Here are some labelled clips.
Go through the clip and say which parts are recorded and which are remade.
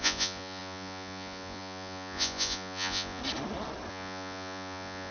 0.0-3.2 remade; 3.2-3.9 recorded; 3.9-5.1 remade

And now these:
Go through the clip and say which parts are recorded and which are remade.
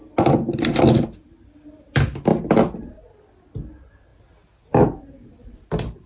0.0-6.1 recorded